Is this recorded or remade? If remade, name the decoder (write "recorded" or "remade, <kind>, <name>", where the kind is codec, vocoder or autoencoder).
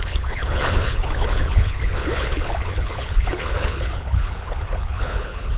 remade, codec, HILCodec